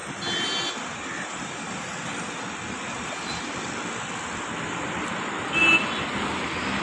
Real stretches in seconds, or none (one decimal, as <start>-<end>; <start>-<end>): 0.0-6.8